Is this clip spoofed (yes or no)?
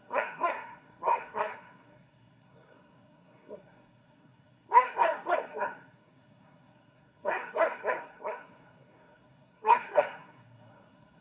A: yes